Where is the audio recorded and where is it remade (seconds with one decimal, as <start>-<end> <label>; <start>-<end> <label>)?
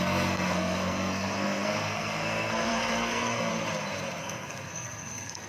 0.0-3.5 remade; 3.5-4.2 recorded; 4.2-5.5 remade